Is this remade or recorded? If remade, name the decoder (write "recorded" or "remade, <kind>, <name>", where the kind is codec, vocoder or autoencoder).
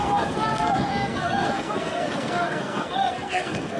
remade, codec, SNAC